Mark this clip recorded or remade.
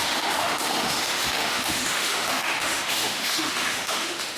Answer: remade